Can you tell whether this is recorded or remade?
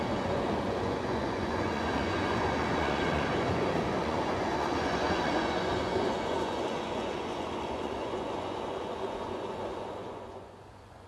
remade